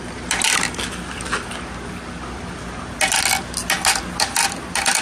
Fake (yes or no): no